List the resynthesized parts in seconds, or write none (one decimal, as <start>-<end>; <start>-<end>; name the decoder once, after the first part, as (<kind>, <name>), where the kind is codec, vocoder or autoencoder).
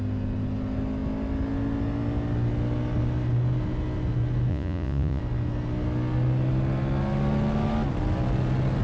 4.5-5.2 (vocoder, Vocos)